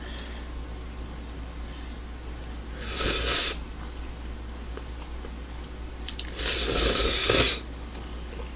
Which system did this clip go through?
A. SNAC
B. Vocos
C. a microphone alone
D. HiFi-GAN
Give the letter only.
C